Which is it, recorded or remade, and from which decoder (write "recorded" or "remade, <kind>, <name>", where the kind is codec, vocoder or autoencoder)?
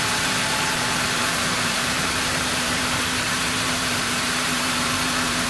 remade, vocoder, BigVGAN v2